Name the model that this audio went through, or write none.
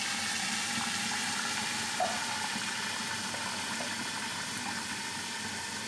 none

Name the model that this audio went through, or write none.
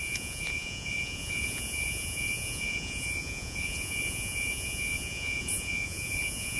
vocoder, Vocos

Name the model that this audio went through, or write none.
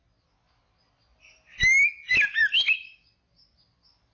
none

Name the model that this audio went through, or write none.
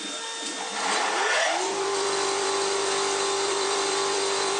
vocoder, BigVGAN v2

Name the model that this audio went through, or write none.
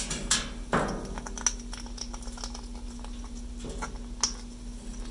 none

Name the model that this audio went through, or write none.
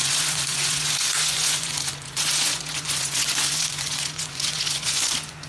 vocoder, Vocos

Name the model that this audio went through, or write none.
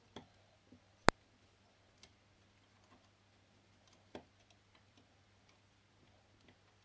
none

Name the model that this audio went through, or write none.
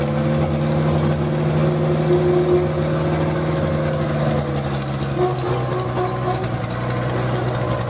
none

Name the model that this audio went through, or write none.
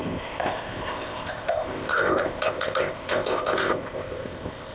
codec, ZipCodec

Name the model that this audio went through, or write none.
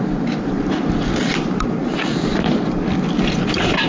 vocoder, BigVGAN v2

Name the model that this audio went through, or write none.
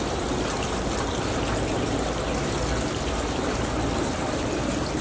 none